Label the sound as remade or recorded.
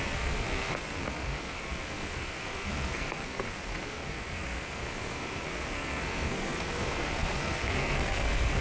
remade